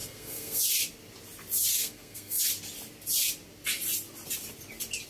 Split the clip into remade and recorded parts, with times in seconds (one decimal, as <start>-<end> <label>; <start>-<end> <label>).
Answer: 0.0-0.6 remade; 0.6-1.7 recorded; 1.7-2.4 remade; 2.4-5.1 recorded